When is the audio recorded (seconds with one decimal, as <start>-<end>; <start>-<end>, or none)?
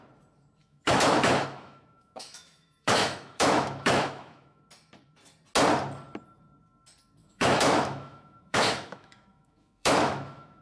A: 0.0-0.6; 4.6-7.2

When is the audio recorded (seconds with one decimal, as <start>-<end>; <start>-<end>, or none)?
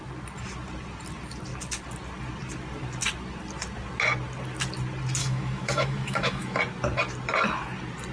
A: 0.0-5.2; 6.6-8.1